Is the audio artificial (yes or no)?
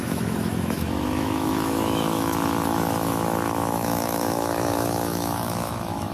yes